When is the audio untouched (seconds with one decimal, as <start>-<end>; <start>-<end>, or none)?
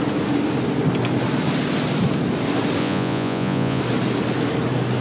0.0-2.8; 3.8-5.0